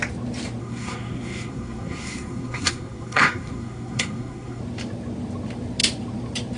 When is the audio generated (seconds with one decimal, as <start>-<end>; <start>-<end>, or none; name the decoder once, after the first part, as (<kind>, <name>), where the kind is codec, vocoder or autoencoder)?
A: 0.6-4.6 (codec, SNAC)